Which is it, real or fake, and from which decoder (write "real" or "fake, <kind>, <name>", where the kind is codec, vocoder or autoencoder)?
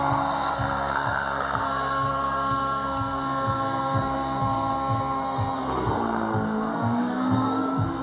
fake, codec, SNAC